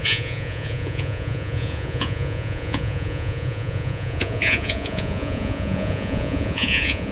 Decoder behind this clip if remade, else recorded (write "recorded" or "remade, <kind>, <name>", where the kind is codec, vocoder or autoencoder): remade, vocoder, Vocos